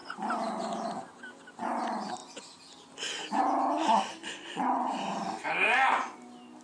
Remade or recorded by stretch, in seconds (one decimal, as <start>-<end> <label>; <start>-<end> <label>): 0.0-4.2 recorded; 4.2-5.0 remade; 5.0-6.6 recorded